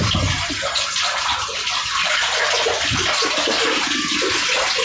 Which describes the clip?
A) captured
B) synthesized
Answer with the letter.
A